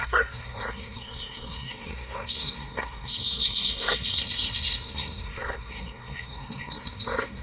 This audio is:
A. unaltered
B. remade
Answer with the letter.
B